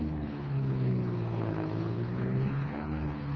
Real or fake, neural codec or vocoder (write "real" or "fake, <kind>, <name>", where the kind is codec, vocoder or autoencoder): fake, codec, HILCodec